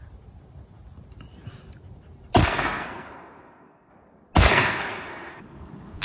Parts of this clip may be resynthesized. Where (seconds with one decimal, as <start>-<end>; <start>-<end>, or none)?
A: 2.4-3.9; 4.5-6.0